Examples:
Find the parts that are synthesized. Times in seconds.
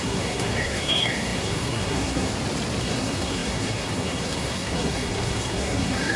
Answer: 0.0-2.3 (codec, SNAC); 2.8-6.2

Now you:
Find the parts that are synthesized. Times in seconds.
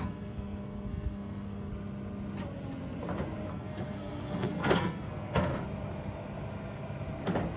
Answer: 0.0-1.7 (codec, SNAC); 3.5-5.5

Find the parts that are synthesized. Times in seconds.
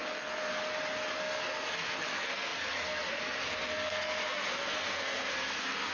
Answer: 0.0-0.5 (codec, SNAC); 1.2-5.9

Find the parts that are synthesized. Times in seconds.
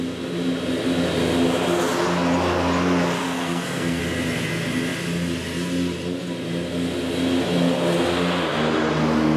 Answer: 3.2-4.0 (codec, SNAC)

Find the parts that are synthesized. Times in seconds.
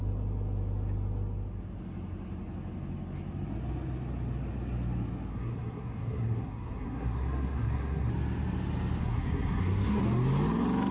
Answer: 5.3-8.1 (codec, SNAC); 9.0-10.0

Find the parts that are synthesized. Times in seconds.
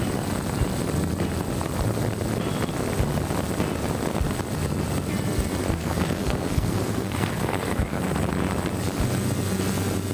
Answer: 5.6-8.0 (codec, SNAC)